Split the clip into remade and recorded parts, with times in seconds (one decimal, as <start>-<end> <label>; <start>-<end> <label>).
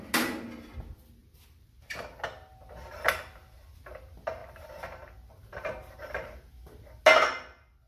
0.0-1.2 recorded; 1.2-2.2 remade; 2.2-4.4 recorded; 4.4-6.5 remade; 6.5-7.9 recorded